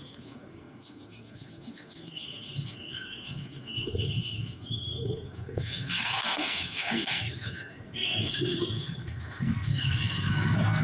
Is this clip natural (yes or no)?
no